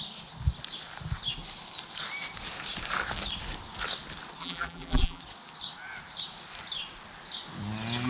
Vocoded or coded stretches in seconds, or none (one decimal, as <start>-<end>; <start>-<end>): 4.4-5.2